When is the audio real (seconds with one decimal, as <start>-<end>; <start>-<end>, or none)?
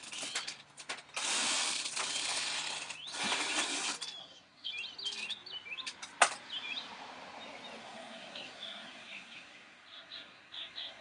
0.0-4.2; 4.7-7.8